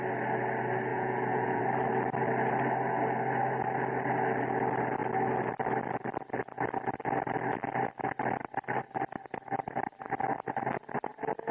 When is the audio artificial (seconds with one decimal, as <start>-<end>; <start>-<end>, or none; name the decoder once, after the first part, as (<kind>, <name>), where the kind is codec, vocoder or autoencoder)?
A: 0.9-1.6 (vocoder, Vocos)